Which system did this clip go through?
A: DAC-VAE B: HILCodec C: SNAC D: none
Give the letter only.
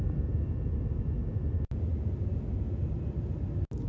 D